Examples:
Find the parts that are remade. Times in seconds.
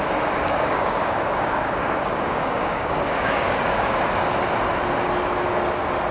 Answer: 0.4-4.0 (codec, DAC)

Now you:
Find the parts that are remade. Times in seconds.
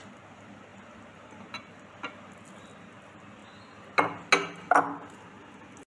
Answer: none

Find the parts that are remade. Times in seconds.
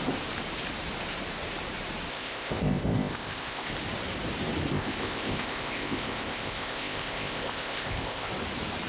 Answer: 2.1-3.7 (codec, ZipCodec); 4.7-8.3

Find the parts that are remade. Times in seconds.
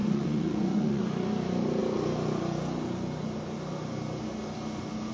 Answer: 0.0-1.0 (vocoder, Vocos)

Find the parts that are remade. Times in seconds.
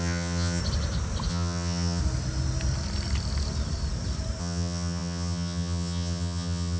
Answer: 0.0-0.6 (vocoder, HiFi-GAN); 1.3-2.0; 4.4-6.8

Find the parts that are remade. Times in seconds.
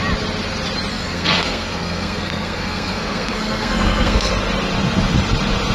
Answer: 0.9-4.3 (codec, SNAC)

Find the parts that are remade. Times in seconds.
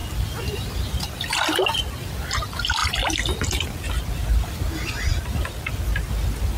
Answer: 0.0-1.3 (vocoder, BigVGAN v2); 2.8-3.9